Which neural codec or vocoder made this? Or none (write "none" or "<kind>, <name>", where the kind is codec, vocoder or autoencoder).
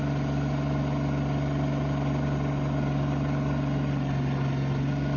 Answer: none